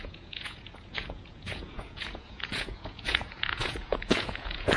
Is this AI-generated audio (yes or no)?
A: yes